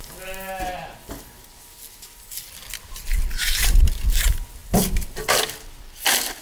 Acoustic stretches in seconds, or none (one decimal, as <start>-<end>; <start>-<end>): 0.0-6.4